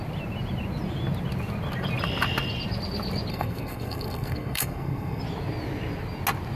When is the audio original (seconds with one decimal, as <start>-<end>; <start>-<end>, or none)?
0.0-3.3; 5.2-6.5

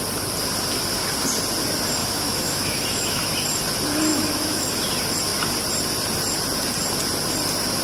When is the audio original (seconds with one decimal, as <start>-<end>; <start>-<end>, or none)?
0.0-2.0; 3.3-4.1; 4.8-7.8

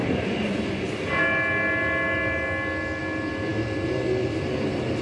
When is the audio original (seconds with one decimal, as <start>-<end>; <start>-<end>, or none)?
0.0-5.0

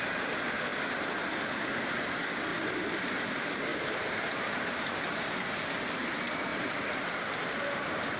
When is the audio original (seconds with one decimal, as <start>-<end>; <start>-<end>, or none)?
0.0-3.7; 5.0-6.5; 7.6-8.2

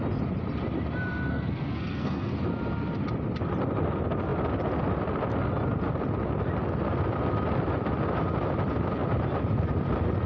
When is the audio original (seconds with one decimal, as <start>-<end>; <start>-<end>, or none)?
0.0-1.3; 2.3-10.3

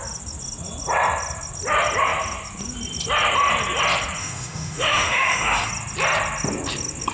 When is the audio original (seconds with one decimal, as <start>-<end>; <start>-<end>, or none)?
0.0-4.2; 5.7-7.1

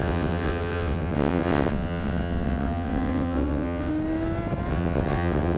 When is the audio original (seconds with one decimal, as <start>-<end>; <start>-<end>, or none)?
3.9-4.7